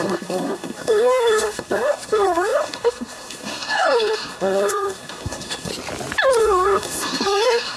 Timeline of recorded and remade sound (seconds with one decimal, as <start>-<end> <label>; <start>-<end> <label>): 0.0-5.7 remade; 5.7-6.4 recorded; 6.4-7.8 remade